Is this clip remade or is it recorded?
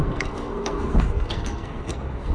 remade